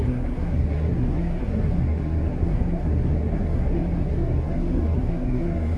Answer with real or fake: fake